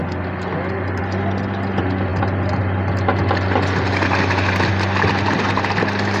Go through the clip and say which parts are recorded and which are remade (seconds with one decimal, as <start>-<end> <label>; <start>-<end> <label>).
0.0-6.2 recorded